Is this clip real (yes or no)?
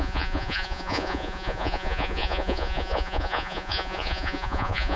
no